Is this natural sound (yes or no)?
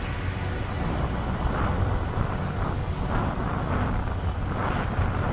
yes